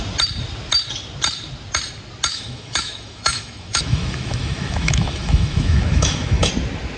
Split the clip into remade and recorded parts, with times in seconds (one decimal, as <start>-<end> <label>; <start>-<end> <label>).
0.0-2.3 recorded; 2.3-6.5 remade; 6.5-7.0 recorded